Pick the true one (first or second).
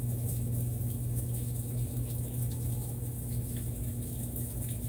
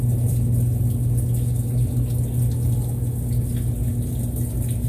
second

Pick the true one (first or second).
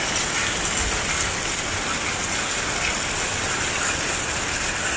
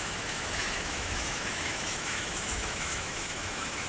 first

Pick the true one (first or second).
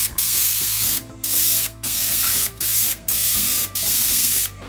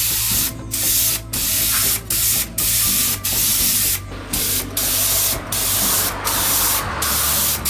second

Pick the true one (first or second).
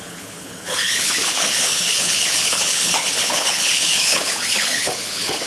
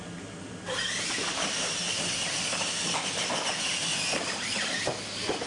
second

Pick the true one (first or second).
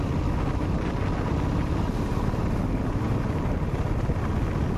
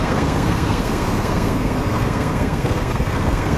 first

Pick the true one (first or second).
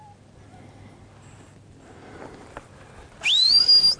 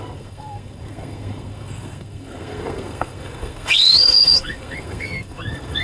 first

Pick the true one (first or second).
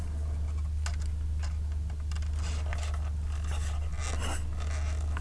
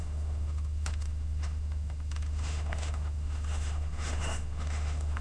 first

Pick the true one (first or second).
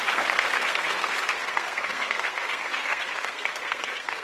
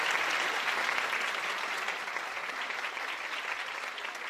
second